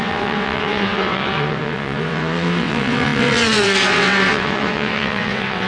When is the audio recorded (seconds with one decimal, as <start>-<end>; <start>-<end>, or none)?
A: none

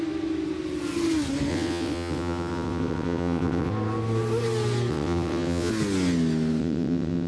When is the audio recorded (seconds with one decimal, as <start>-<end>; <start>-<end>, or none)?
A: 0.0-1.5; 3.7-4.9; 5.7-6.6

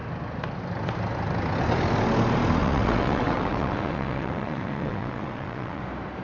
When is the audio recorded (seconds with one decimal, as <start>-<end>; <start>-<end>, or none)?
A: 0.0-2.6; 5.8-6.2

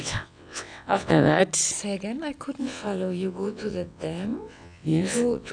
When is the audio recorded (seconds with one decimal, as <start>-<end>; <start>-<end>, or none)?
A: 1.4-2.6

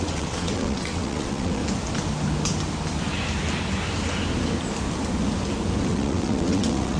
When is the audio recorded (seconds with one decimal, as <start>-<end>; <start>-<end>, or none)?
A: 1.6-5.8

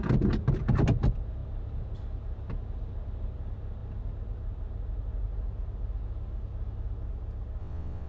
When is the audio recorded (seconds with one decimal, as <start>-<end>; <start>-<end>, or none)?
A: 0.0-7.6

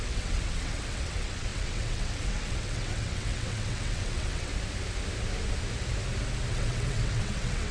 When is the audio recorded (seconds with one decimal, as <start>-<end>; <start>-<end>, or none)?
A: 4.5-6.5

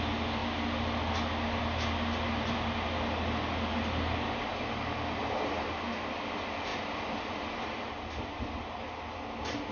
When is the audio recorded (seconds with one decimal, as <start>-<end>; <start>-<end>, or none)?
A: 0.0-9.7